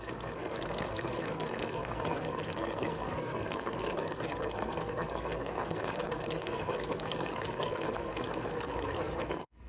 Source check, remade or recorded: remade